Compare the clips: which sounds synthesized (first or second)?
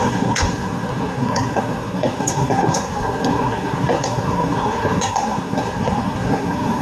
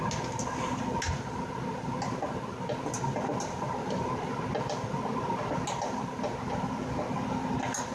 first